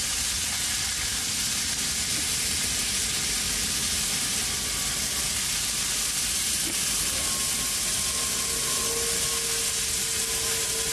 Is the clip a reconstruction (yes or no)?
no